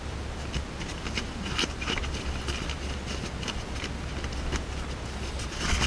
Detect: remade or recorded recorded